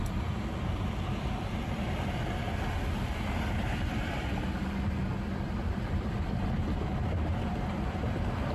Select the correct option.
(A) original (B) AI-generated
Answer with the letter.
B